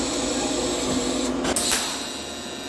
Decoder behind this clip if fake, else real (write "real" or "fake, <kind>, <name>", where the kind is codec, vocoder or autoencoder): real